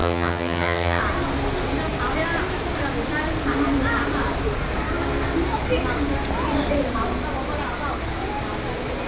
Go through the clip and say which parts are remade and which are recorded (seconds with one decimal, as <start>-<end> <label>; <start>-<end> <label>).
0.0-1.0 remade; 1.0-9.1 recorded

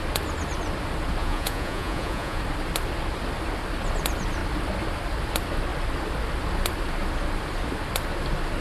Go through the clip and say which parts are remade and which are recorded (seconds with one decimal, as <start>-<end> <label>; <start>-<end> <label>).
0.0-1.2 recorded; 1.2-2.4 remade; 2.4-8.6 recorded